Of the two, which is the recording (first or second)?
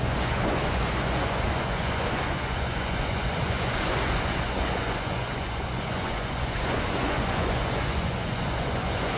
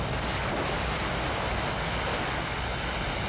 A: second